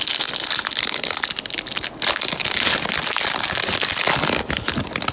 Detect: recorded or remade recorded